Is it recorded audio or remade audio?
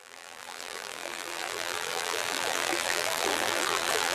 remade